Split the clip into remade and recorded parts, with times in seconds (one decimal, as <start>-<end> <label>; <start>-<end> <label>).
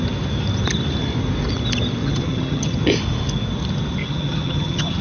0.0-2.0 recorded; 2.0-2.8 remade; 2.8-4.0 recorded; 4.0-5.0 remade